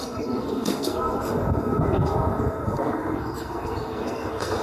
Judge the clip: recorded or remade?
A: remade